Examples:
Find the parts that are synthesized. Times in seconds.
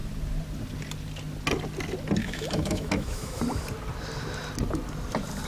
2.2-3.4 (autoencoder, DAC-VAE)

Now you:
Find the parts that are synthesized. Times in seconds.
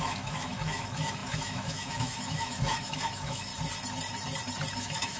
0.0-3.5 (autoencoder, DAC-VAE); 4.7-5.2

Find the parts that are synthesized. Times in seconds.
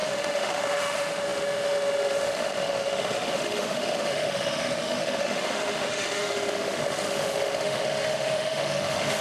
0.0-9.2 (autoencoder, DAC-VAE)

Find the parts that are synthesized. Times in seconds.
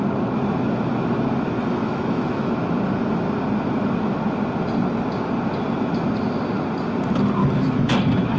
1.6-2.5 (autoencoder, DAC-VAE); 7.4-7.9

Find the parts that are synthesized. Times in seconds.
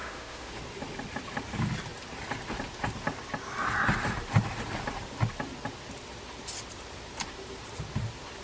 0.0-0.5 (autoencoder, DAC-VAE)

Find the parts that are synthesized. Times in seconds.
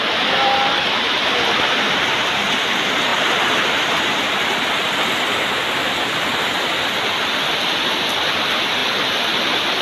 none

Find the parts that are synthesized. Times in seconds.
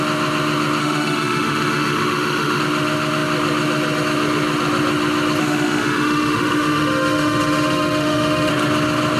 0.8-2.6 (autoencoder, DAC-VAE); 5.4-8.5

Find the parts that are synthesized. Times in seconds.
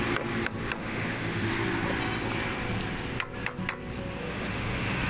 0.8-1.5 (autoencoder, DAC-VAE); 4.2-5.1